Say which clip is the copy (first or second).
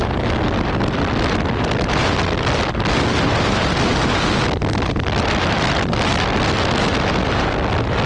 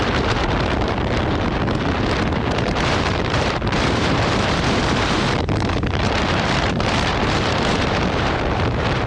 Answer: second